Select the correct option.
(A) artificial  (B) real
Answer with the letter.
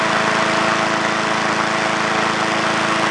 B